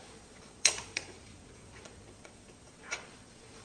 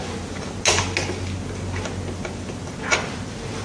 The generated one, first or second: first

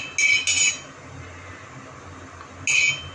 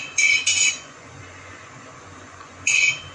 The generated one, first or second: second